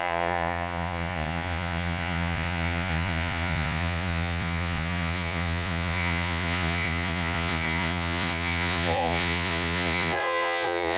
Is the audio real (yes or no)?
no